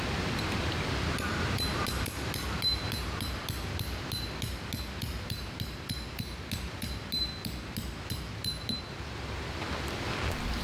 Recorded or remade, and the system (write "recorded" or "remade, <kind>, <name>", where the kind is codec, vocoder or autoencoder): recorded